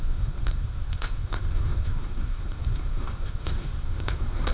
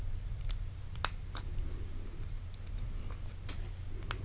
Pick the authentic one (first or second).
second